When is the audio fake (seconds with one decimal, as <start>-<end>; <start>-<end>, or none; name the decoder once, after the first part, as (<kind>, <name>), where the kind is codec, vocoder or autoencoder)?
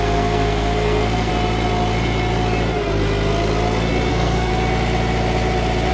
0.0-1.3 (codec, SNAC); 4.1-4.5